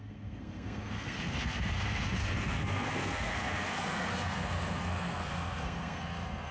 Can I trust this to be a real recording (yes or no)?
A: no